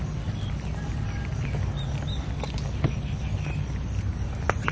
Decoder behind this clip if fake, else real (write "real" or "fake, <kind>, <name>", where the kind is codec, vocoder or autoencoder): real